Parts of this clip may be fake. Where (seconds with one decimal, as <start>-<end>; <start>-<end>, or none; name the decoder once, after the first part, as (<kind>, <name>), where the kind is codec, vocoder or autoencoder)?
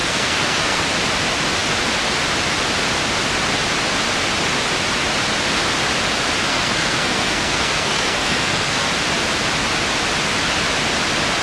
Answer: 0.0-0.8 (codec, SNAC); 6.5-8.9